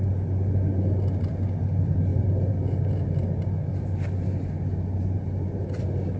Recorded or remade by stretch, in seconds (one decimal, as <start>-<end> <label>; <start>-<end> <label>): 0.0-6.2 recorded